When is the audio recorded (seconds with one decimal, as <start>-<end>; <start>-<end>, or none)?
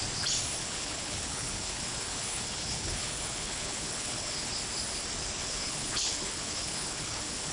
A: 0.0-0.6; 4.5-5.4